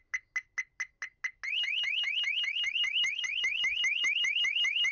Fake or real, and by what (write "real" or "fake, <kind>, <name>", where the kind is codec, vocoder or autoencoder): real